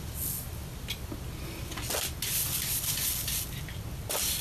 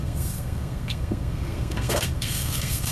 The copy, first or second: second